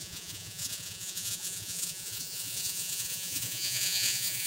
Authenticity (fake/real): fake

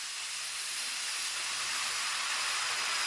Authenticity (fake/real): real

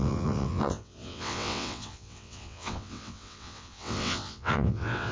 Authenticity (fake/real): fake